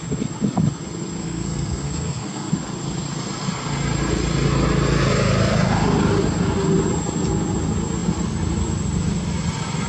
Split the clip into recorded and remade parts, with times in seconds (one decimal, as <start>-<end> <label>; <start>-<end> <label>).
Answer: 0.0-1.2 recorded; 1.2-2.5 remade; 2.5-9.9 recorded

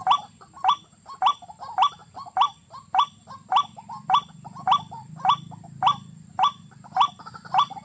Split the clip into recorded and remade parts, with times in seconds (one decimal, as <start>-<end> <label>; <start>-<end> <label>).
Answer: 0.0-7.8 recorded

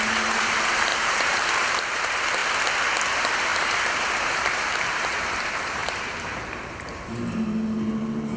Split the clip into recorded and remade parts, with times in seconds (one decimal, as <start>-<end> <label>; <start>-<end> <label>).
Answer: 0.0-2.4 remade; 2.4-3.1 recorded; 3.1-8.4 remade

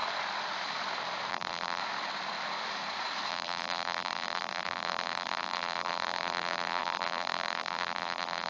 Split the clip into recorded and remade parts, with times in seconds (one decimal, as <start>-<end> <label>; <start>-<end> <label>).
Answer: 0.0-1.3 recorded; 1.3-1.8 remade; 1.8-3.3 recorded; 3.3-8.5 remade

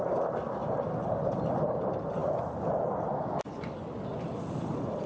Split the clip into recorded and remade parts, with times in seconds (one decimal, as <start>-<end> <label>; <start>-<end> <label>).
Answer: 0.0-5.1 recorded

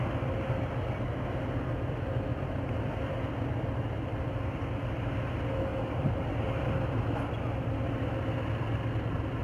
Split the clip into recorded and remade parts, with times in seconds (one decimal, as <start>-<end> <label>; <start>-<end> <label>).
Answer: 0.0-2.3 recorded; 2.3-2.9 remade; 2.9-5.7 recorded; 5.7-7.0 remade; 7.0-9.4 recorded